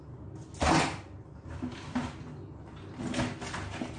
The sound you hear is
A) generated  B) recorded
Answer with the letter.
B